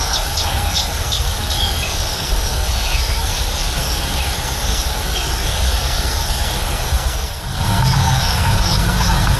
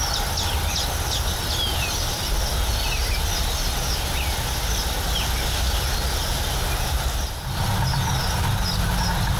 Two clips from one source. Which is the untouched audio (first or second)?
second